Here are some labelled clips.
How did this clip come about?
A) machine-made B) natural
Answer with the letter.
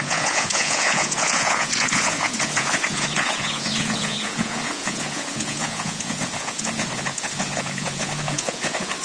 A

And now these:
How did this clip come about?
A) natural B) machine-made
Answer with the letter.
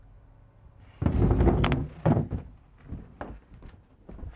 A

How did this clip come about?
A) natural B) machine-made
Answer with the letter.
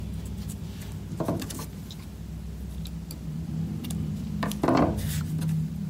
A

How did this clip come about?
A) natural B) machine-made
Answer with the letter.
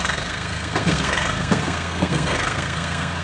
B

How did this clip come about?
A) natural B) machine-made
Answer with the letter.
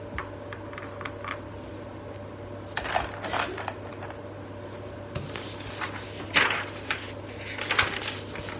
A